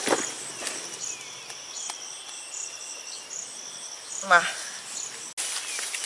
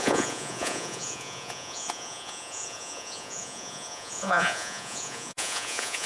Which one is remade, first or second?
second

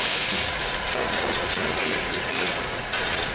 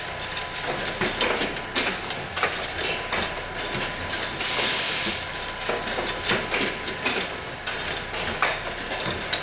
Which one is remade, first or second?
first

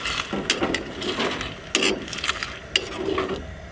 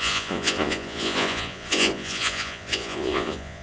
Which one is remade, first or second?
second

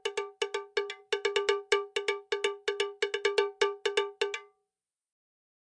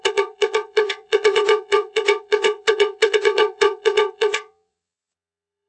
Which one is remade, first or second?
second